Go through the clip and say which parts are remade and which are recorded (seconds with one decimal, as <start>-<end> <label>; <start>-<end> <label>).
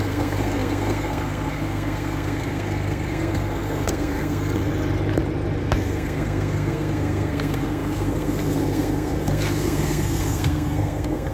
0.0-4.7 remade; 4.7-5.6 recorded; 5.6-11.3 remade